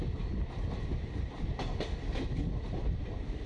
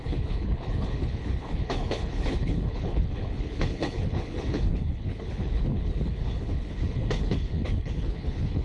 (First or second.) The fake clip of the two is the second